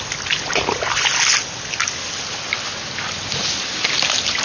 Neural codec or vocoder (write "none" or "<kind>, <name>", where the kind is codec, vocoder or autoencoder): none